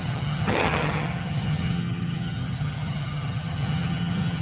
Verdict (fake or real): fake